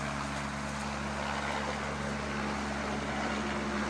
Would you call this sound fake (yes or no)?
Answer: no